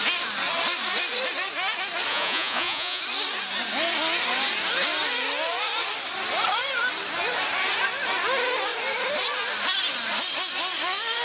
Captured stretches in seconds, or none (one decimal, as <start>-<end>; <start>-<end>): 0.0-2.1; 3.0-11.2